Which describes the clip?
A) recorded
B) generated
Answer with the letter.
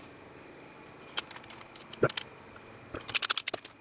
A